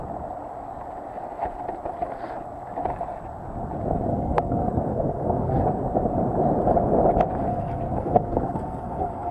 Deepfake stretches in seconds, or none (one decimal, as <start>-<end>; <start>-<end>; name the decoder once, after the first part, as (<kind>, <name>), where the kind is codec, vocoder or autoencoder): 4.1-5.6 (codec, SNAC); 7.5-9.3

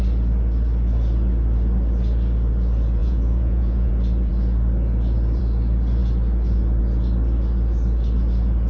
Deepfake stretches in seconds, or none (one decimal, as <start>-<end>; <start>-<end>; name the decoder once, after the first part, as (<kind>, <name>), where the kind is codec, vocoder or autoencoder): 3.0-3.9 (vocoder, Vocos)